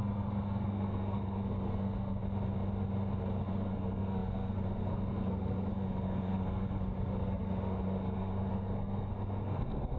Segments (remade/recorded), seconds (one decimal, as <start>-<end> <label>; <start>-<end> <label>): 0.0-2.2 remade; 2.2-3.4 recorded; 3.4-10.0 remade